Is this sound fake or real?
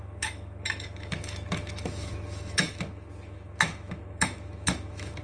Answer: fake